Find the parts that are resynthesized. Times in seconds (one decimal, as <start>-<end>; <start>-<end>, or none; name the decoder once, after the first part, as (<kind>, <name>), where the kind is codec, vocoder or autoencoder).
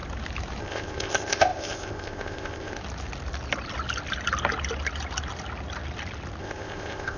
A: 0.6-2.8 (codec, ZipCodec); 6.4-7.2